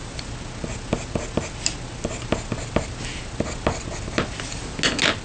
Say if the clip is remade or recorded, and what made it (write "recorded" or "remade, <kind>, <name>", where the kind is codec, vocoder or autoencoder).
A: recorded